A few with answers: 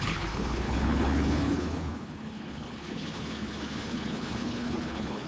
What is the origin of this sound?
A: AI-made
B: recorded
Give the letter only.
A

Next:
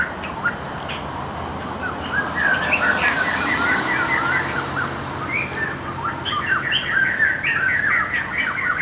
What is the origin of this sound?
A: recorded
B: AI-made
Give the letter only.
A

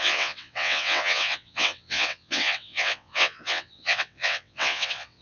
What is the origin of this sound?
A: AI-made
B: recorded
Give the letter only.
A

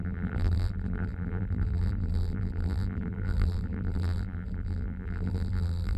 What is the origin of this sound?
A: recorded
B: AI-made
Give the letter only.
B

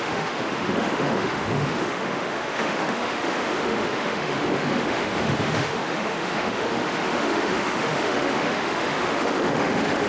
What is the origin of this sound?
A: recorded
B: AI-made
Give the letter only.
B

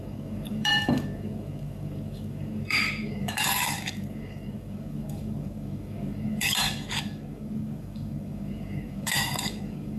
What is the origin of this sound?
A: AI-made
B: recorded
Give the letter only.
A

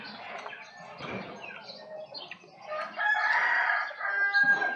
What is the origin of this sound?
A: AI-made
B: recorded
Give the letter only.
B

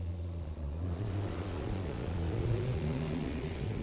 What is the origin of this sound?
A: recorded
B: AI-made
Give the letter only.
B